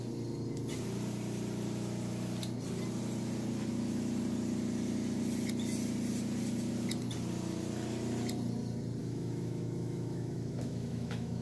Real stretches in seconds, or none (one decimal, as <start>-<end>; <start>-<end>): 0.0-9.0

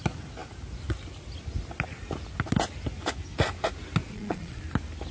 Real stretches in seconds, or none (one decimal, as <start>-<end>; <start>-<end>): 0.0-4.0; 4.6-5.1

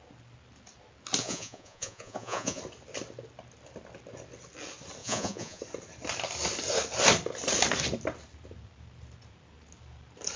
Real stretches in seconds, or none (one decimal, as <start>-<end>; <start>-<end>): 0.0-1.2; 2.6-5.0; 5.6-10.4

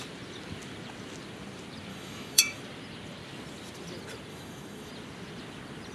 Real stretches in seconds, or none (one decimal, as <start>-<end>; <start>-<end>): 0.0-1.9; 2.6-4.3; 4.9-5.9

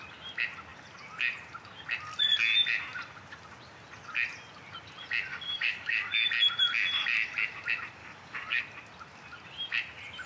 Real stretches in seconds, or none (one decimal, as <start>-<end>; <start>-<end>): 0.0-5.3; 6.1-8.0; 8.6-10.3

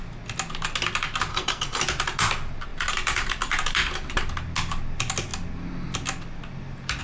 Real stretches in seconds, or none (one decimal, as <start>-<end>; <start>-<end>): 0.0-1.3; 1.8-7.0

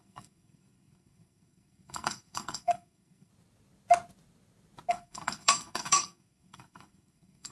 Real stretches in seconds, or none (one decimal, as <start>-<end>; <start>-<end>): 3.3-4.9

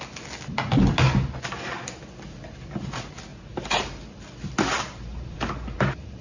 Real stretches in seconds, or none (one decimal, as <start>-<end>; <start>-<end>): 0.0-3.3; 4.1-5.1